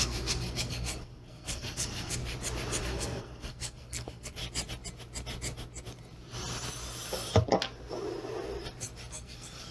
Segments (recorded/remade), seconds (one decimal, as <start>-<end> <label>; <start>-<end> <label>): 0.0-2.2 remade; 2.2-2.8 recorded; 2.8-4.4 remade; 4.4-9.1 recorded; 9.1-9.7 remade